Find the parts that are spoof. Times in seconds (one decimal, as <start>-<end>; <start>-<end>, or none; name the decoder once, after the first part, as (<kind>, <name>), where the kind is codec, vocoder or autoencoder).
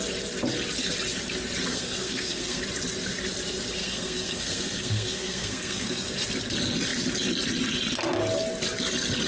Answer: 1.7-2.6 (codec, SNAC); 3.8-6.1